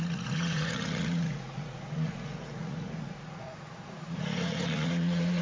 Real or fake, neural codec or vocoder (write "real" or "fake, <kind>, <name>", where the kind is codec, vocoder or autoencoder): fake, vocoder, Vocos